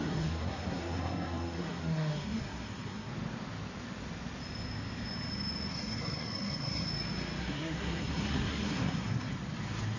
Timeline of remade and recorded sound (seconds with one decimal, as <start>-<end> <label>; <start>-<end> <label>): 0.0-3.1 remade; 3.1-5.7 recorded; 5.7-6.9 remade; 6.9-7.4 recorded; 7.4-9.3 remade; 9.3-10.0 recorded

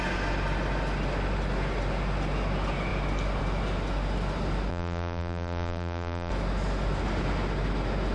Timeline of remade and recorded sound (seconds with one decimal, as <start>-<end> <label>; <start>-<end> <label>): 0.0-4.7 recorded; 4.7-6.3 remade; 6.3-8.1 recorded

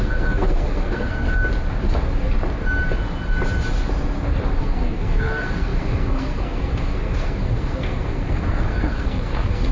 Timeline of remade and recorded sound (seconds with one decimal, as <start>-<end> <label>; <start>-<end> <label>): 0.0-1.4 remade; 1.4-4.6 recorded; 4.6-9.7 remade

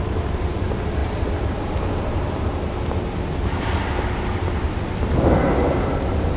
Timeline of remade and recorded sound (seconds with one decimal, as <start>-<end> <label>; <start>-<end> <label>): 0.0-1.0 remade; 1.0-4.0 recorded; 4.0-5.4 remade; 5.4-6.4 recorded

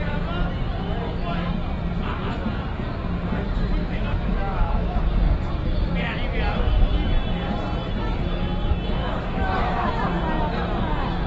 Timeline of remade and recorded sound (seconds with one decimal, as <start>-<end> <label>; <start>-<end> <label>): 0.0-3.8 recorded; 3.8-5.1 remade; 5.1-9.0 recorded; 9.0-9.9 remade; 9.9-11.3 recorded

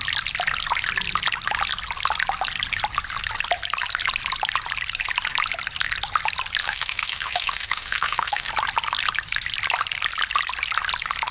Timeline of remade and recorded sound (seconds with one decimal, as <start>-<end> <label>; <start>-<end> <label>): 0.0-6.6 recorded; 6.6-8.5 remade; 8.5-11.3 recorded

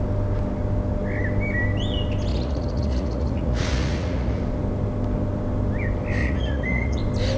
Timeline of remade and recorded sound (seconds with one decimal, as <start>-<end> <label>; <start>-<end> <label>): 0.0-2.3 recorded; 2.3-4.4 remade; 4.4-6.2 recorded; 6.2-7.0 remade; 7.0-7.4 recorded